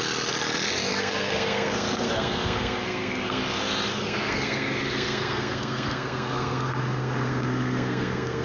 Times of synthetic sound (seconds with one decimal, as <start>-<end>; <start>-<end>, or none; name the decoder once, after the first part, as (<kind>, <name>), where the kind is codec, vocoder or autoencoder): 0.9-3.4 (codec, SNAC); 3.9-8.4